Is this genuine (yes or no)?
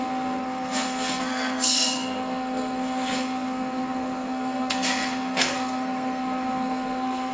no